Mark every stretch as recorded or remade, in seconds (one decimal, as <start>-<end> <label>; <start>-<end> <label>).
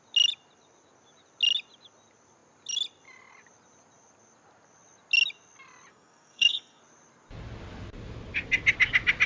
0.0-5.9 recorded; 5.9-6.8 remade; 6.8-9.3 recorded